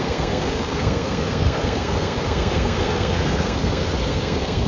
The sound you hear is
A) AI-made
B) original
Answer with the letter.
A